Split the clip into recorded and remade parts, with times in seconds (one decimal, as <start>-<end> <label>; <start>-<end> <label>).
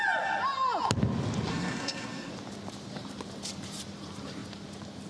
0.0-1.5 recorded; 1.5-2.3 remade; 2.3-5.1 recorded